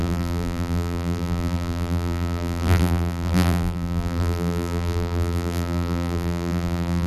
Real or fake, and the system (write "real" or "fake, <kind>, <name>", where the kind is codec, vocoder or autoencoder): fake, vocoder, BigVGAN v2